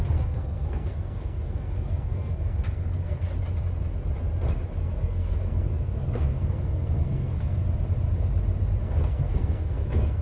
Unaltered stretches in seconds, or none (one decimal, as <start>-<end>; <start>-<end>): 3.3-4.8; 7.6-8.8